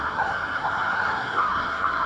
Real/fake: fake